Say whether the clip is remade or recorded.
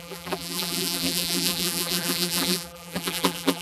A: remade